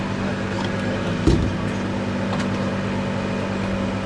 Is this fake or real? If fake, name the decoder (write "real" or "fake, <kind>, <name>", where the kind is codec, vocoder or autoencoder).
real